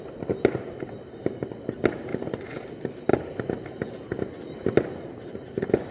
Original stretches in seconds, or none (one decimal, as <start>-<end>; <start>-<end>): 0.0-2.1; 2.7-5.9